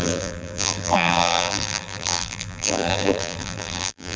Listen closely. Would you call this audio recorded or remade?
remade